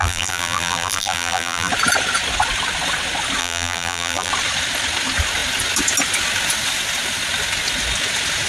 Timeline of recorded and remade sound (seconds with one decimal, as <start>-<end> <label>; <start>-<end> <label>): 0.0-1.7 remade; 1.7-3.4 recorded; 3.4-4.3 remade; 4.3-8.5 recorded